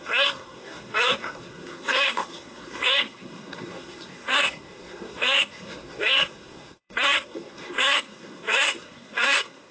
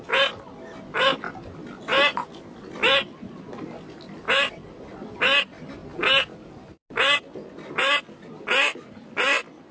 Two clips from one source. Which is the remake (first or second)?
first